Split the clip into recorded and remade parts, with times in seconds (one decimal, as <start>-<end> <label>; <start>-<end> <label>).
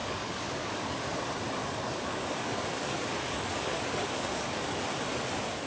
0.0-1.2 remade; 1.2-1.6 recorded; 1.6-5.0 remade; 5.0-5.7 recorded